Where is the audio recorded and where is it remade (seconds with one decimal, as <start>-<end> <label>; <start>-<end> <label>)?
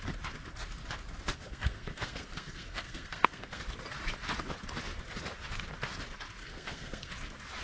0.0-1.3 recorded; 1.3-3.6 remade; 3.6-6.4 recorded; 6.4-7.1 remade; 7.1-7.6 recorded